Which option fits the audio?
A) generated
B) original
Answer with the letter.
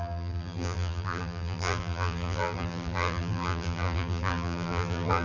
A